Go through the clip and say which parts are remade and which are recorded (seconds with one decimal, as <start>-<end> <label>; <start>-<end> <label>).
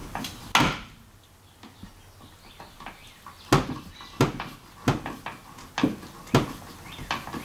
0.0-7.4 recorded